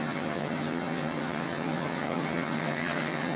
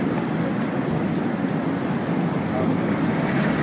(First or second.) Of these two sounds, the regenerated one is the first